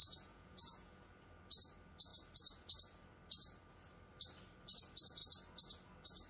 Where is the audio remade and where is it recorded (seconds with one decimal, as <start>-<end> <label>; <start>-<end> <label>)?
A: 0.0-1.1 remade; 1.1-6.3 recorded